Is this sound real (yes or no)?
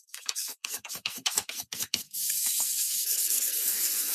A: no